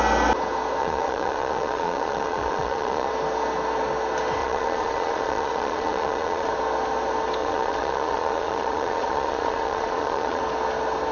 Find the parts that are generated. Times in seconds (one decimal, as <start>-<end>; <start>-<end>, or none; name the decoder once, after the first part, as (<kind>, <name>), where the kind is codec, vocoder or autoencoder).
0.8-3.1 (vocoder, Vocos); 4.4-6.5; 7.4-10.4